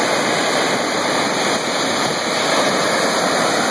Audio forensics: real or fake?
real